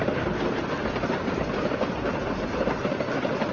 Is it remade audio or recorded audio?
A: remade